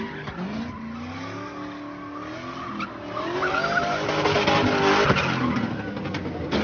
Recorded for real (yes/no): yes